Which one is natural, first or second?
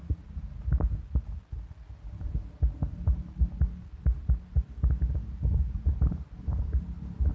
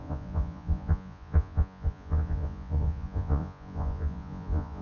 first